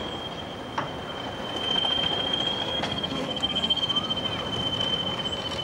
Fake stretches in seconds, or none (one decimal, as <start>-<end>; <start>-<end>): 2.6-3.8